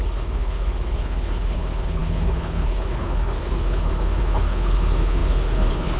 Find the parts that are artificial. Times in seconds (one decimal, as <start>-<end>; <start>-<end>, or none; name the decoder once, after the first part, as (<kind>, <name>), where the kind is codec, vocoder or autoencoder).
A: 0.0-6.0 (codec, HILCodec)